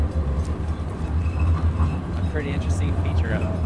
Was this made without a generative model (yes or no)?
no